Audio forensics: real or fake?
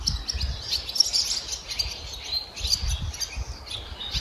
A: real